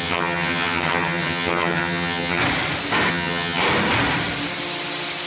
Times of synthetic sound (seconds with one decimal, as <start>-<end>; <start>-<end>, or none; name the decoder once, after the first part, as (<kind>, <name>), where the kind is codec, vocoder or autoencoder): 0.0-2.4 (vocoder, HiFi-GAN); 3.1-3.6